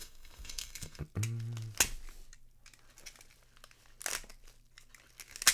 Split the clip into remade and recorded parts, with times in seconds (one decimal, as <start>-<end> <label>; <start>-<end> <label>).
0.0-1.0 remade; 1.0-5.5 recorded